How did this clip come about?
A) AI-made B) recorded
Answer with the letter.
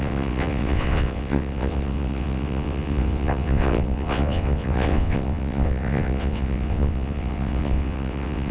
A